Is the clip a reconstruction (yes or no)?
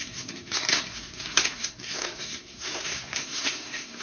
yes